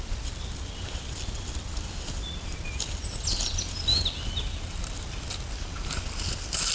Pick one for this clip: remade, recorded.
recorded